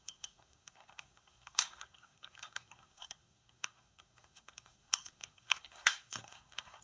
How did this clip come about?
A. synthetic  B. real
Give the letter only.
A